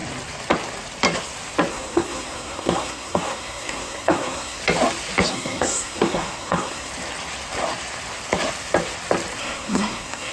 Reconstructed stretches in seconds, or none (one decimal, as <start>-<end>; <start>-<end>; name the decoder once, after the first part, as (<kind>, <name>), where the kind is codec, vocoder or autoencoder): 1.7-4.6 (codec, SNAC); 5.3-6.9; 9.4-10.3